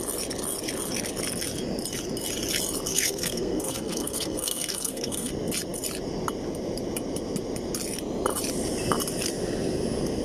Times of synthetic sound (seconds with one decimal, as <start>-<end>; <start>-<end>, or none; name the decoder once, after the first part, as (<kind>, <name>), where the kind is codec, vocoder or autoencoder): 2.9-5.3 (codec, SNAC)